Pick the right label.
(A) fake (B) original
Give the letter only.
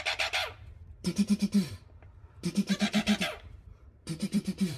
A